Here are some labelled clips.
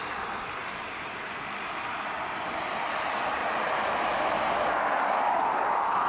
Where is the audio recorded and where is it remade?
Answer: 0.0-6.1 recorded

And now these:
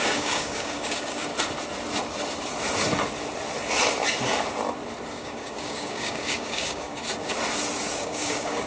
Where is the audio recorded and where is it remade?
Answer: 0.0-1.3 remade; 1.3-5.1 recorded; 5.1-7.0 remade; 7.0-7.9 recorded; 7.9-8.7 remade

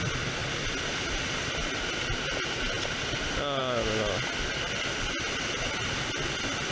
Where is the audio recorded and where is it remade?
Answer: 0.0-6.7 recorded